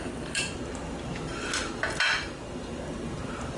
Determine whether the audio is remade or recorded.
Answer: recorded